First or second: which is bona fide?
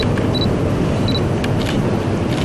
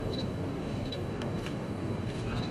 first